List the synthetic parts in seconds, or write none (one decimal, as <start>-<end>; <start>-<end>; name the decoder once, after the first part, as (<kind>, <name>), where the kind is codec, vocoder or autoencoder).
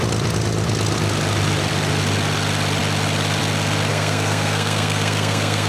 3.9-5.7 (codec, SNAC)